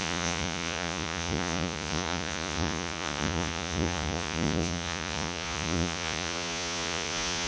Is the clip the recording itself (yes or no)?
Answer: no